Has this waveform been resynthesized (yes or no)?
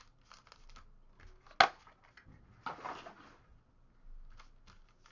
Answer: no